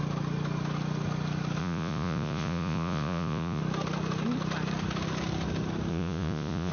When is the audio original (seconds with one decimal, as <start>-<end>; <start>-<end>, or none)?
0.0-1.6; 3.6-5.9